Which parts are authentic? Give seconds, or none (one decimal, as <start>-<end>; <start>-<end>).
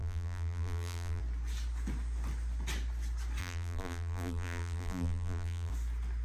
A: 1.2-3.4; 5.7-6.2